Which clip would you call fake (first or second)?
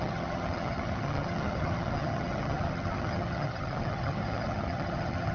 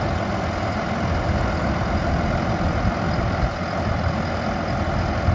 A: first